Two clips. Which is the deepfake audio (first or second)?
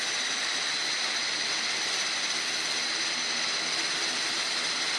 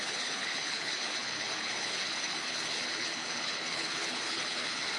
second